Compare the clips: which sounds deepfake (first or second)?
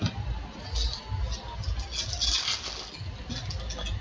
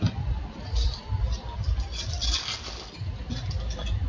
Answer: second